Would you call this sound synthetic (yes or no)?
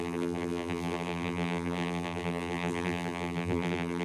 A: yes